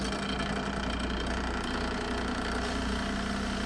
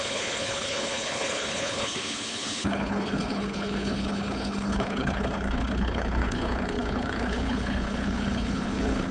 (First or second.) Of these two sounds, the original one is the first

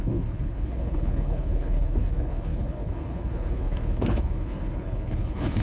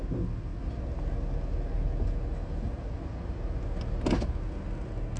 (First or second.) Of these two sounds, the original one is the second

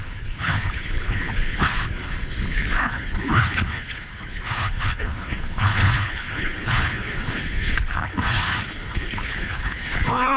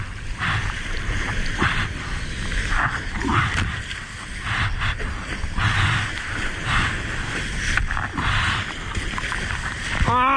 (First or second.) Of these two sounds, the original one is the second